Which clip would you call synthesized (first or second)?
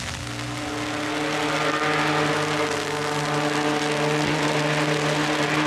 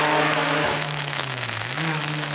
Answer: second